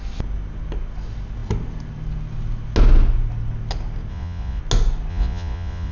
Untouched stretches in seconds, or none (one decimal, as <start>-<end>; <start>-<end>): 0.0-4.1; 4.6-5.1